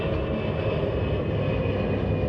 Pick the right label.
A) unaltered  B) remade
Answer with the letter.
A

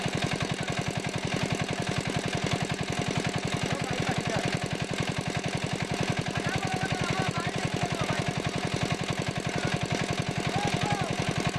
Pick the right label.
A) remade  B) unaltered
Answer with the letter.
B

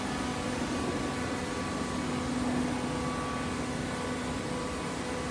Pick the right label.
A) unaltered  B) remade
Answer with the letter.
A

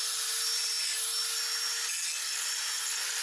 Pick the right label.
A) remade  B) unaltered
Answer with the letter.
B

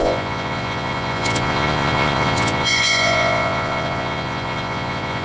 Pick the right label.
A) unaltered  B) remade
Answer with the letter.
B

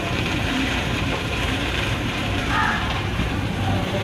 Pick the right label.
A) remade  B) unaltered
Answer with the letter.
A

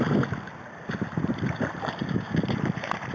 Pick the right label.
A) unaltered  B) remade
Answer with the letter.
A